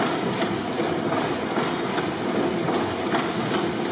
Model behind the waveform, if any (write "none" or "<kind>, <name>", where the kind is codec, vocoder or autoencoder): none